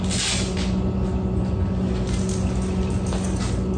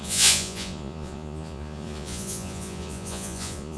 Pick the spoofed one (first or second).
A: second